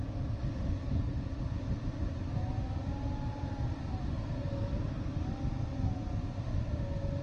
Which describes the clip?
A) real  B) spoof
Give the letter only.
A